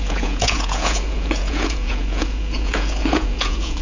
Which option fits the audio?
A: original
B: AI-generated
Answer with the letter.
B